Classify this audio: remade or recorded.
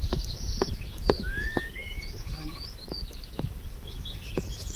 remade